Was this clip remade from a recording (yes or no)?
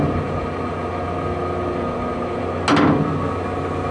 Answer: no